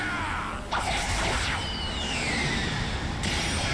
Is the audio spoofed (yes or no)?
no